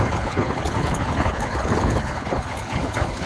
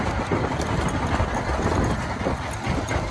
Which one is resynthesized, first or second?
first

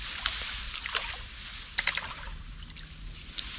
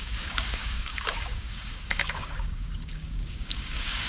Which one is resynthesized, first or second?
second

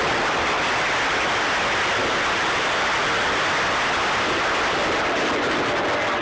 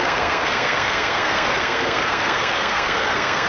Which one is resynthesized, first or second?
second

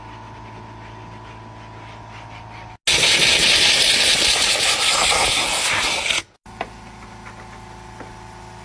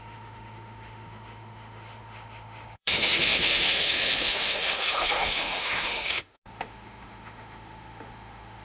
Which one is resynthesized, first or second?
second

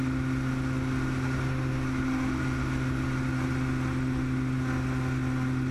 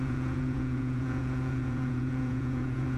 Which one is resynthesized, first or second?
second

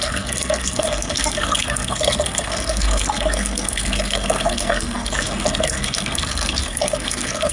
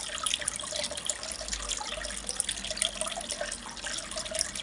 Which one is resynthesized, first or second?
first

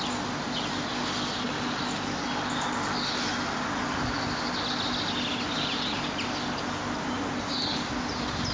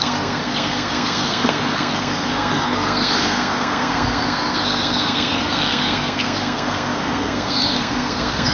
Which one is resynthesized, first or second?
second